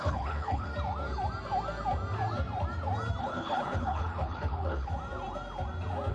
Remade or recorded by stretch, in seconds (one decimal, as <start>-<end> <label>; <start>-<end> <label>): 0.0-0.7 remade; 0.7-3.2 recorded; 3.2-4.9 remade; 4.9-6.1 recorded